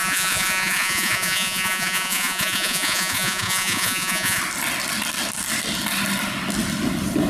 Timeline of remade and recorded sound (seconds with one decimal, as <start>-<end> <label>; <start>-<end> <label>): 0.0-4.4 remade; 4.4-7.3 recorded